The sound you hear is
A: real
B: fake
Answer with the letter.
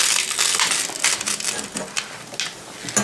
A